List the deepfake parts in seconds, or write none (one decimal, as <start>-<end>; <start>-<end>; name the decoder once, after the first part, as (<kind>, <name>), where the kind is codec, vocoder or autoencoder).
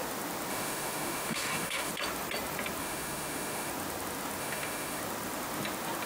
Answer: 0.5-1.9 (autoencoder, DAC-VAE); 2.8-3.7; 4.4-5.0